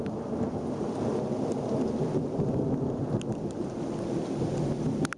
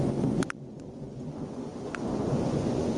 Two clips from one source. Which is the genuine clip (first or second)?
first